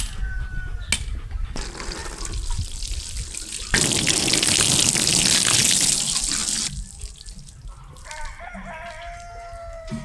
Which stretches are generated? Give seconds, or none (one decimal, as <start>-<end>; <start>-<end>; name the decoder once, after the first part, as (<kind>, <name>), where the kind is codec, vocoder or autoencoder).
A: none